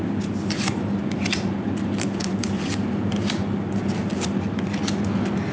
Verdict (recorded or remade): recorded